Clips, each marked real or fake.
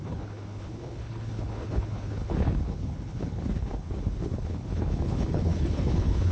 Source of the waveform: fake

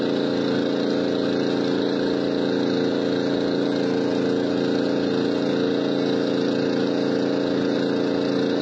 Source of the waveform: real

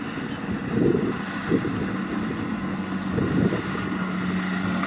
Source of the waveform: real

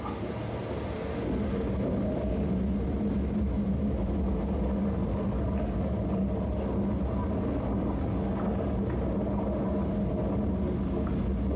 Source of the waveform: real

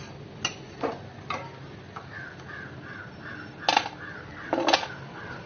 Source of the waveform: real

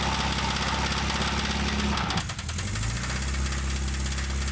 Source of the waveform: real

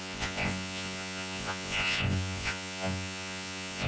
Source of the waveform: fake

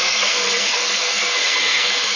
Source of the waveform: fake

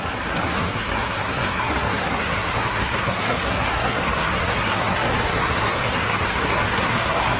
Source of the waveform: fake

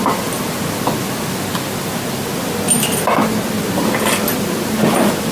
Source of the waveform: real